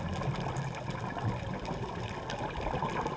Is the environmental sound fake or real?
real